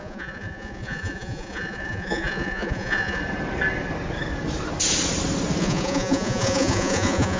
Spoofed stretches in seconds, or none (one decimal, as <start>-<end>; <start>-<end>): 0.0-3.2; 5.6-7.4